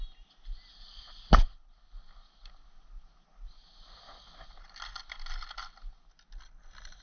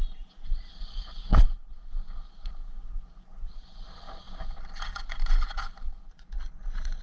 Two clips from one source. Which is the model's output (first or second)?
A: second